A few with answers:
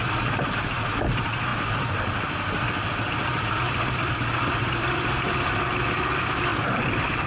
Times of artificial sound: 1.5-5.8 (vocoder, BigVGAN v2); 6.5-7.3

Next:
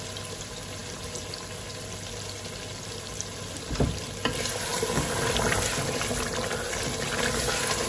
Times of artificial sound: none

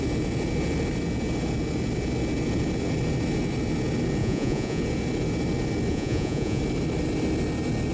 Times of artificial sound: 4.2-4.8 (vocoder, Vocos); 5.9-6.6

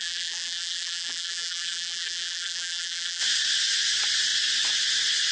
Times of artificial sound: 0.0-3.2 (vocoder, BigVGAN v2)

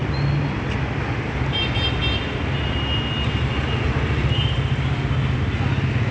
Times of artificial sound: none

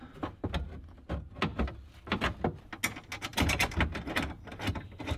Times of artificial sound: 1.5-2.8 (vocoder, BigVGAN v2); 3.3-3.8

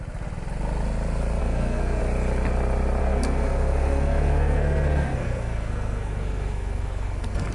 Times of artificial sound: 1.4-2.0 (codec, SNAC); 3.0-7.5

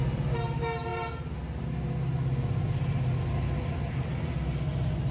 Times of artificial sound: none